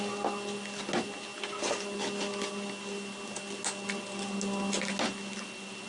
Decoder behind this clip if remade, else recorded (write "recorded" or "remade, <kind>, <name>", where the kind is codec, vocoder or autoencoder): recorded